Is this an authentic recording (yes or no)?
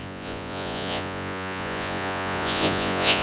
no